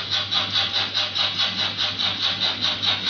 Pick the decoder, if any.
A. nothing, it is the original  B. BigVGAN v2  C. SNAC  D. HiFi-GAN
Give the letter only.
A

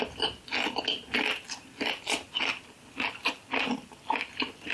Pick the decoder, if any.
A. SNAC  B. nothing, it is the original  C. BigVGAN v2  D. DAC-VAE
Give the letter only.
B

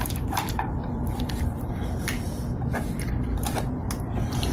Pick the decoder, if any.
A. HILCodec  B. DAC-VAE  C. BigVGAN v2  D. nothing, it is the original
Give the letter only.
C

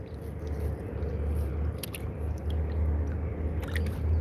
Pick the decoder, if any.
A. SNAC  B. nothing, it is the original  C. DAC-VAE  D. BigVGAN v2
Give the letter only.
B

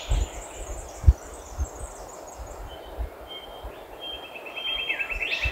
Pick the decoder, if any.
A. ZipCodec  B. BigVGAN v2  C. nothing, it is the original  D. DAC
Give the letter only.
B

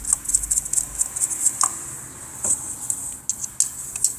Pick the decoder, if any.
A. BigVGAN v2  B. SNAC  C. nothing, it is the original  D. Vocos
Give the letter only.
C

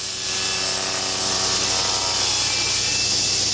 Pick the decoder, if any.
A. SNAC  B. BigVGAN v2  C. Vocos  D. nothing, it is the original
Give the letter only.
D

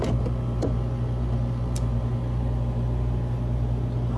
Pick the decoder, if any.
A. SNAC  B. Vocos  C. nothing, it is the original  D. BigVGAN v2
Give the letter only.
C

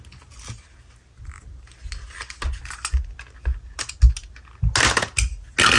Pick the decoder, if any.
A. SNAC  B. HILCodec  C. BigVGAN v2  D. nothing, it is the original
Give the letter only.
D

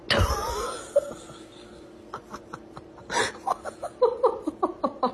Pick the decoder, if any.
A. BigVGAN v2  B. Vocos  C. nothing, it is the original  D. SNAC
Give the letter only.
C